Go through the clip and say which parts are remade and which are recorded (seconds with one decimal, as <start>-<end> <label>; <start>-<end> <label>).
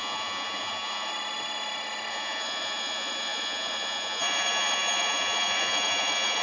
0.0-1.1 remade; 1.1-2.1 recorded; 2.1-6.4 remade